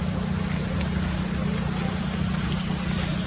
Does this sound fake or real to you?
real